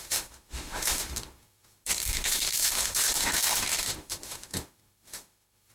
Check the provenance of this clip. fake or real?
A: fake